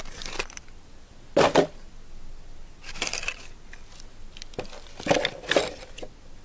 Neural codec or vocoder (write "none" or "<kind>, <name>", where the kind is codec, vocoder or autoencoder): none